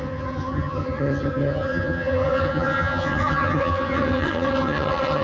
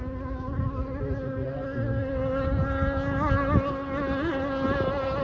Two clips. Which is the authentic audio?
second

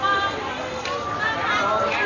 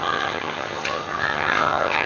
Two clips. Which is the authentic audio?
first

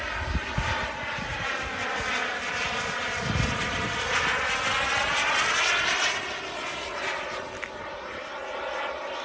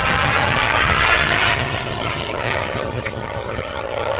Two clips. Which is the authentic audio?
first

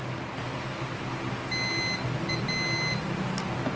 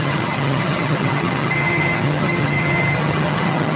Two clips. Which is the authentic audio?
first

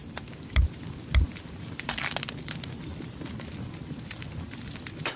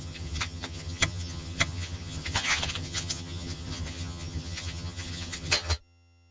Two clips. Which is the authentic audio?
first